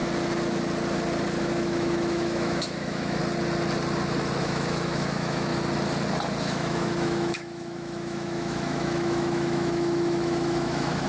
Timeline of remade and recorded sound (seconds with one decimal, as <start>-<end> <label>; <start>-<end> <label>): 0.0-1.4 recorded; 1.4-3.2 remade; 3.2-4.4 recorded; 4.4-5.5 remade; 5.5-6.4 recorded; 6.4-11.1 remade